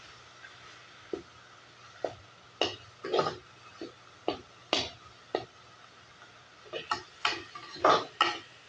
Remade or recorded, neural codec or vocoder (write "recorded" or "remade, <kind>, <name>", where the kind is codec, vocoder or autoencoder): recorded